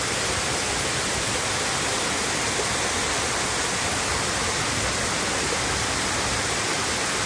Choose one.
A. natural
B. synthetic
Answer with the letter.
A